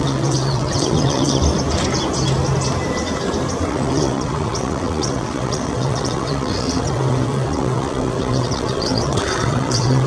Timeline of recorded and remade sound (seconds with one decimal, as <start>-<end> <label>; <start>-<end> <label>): 0.0-1.4 remade; 1.4-3.6 recorded; 3.6-10.1 remade